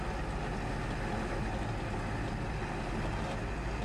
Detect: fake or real real